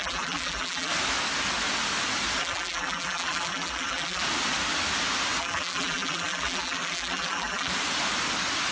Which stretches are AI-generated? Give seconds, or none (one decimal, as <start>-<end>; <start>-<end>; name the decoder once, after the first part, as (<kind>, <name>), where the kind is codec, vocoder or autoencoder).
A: 0.0-0.9 (vocoder, BigVGAN v2); 2.4-4.2; 5.4-7.7